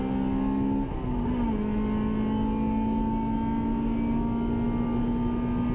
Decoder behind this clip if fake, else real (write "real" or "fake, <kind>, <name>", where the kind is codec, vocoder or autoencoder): real